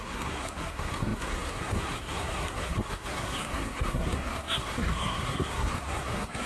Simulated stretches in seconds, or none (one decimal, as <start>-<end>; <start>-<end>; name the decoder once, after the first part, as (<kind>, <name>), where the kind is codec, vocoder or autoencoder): 0.0-6.5 (codec, SNAC)